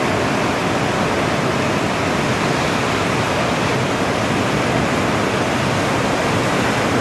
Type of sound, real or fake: real